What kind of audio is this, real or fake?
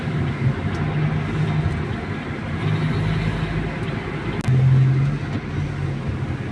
real